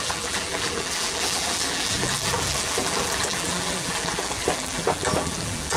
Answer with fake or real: fake